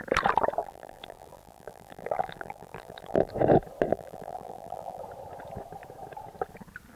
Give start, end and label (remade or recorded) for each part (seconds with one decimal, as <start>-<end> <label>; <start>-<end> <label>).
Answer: 0.0-0.6 recorded; 0.6-3.3 remade; 3.3-3.9 recorded; 3.9-5.0 remade; 5.0-7.0 recorded